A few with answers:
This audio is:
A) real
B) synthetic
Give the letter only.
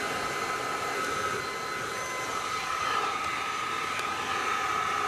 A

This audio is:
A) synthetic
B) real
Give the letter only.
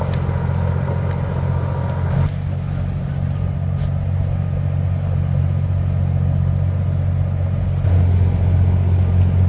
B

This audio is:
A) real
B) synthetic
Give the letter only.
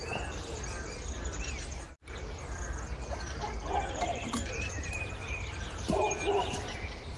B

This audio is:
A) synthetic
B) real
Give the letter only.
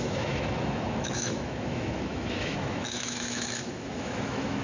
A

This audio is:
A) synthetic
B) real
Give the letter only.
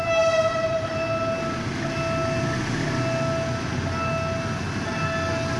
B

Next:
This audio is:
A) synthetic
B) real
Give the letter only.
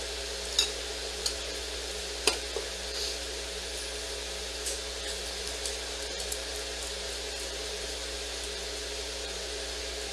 B